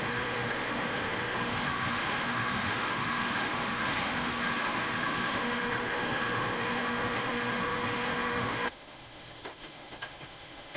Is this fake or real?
fake